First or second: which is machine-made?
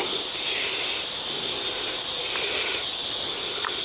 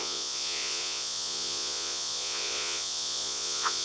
second